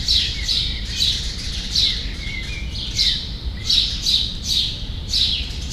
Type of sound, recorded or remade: recorded